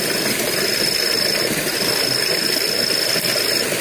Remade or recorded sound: recorded